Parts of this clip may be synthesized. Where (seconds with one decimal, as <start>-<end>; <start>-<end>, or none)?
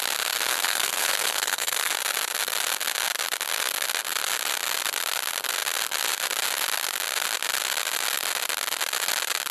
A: 0.5-1.9